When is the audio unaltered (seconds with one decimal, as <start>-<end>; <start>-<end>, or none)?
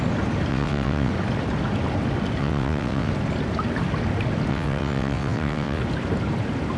0.0-0.5; 1.1-2.4; 3.1-4.5; 5.8-6.8